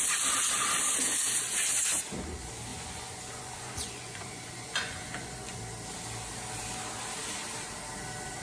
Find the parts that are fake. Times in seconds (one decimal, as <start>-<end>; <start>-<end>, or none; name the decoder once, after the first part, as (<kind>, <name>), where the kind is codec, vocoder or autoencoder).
2.7-5.6 (vocoder, Vocos)